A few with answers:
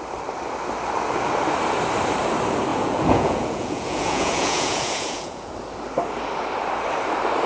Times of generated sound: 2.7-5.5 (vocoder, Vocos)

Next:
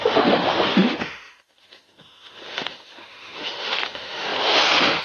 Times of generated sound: 0.0-5.0 (autoencoder, DAC-VAE)

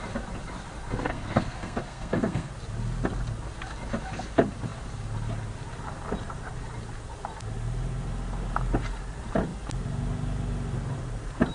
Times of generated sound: 1.1-2.5 (codec, SNAC)

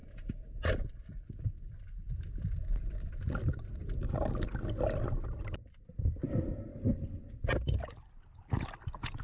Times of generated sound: 6.7-7.2 (codec, HILCodec)

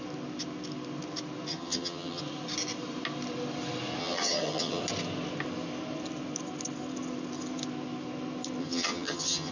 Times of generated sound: 1.5-2.2 (vocoder, HiFi-GAN); 4.0-4.8; 8.6-9.5

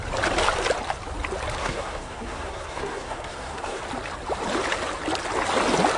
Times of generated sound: 1.6-3.8 (codec, SNAC)

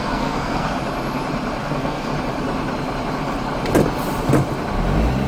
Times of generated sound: 0.0-0.8 (codec, SNAC); 1.6-2.1

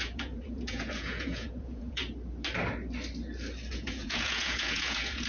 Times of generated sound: 0.0-2.0 (vocoder, Vocos); 3.7-5.3